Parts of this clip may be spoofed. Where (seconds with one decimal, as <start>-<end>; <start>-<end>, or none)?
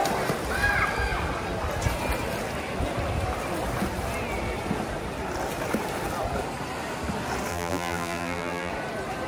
7.5-8.7